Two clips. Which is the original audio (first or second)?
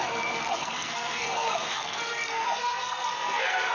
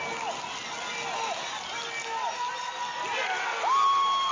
second